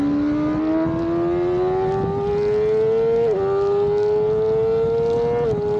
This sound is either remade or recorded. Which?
recorded